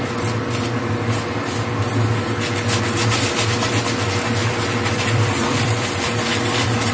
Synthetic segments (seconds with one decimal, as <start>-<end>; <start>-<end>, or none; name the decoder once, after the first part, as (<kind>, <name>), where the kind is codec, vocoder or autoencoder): 4.4-6.9 (vocoder, BigVGAN v2)